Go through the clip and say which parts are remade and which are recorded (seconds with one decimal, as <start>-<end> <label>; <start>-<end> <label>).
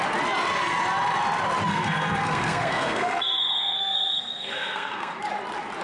0.0-1.7 recorded; 1.7-5.2 remade; 5.2-5.8 recorded